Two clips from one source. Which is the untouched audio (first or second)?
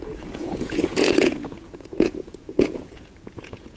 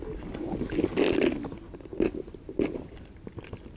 second